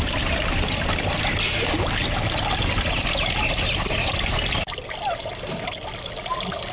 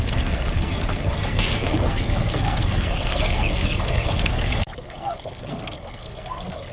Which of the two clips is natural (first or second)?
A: first